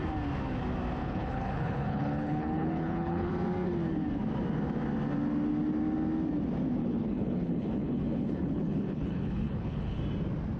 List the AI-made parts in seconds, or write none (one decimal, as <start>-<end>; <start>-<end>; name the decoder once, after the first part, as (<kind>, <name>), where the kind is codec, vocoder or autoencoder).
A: 1.0-3.3 (codec, HILCodec); 6.8-10.0